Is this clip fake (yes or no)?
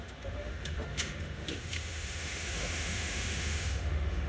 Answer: yes